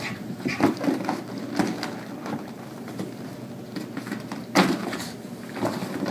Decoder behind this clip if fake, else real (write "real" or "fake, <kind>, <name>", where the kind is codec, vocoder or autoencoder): real